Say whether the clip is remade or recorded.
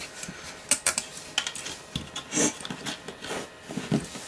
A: recorded